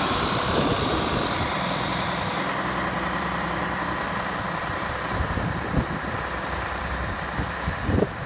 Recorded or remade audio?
remade